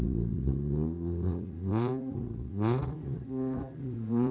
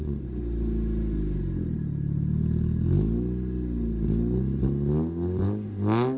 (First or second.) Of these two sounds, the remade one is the first